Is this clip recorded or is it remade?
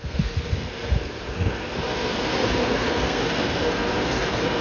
remade